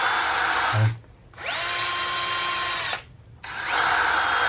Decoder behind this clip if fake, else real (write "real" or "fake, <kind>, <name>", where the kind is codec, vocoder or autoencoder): real